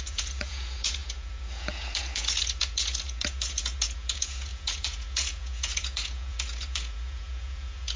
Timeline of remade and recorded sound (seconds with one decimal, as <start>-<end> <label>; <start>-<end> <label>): 0.0-8.0 remade